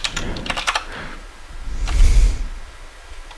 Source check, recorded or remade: recorded